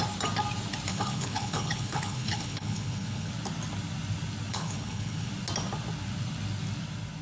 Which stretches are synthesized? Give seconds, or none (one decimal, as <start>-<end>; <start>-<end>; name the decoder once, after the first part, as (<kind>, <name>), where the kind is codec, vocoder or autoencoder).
0.9-3.3 (codec, HILCodec); 4.5-5.3